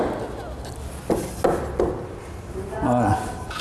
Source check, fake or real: real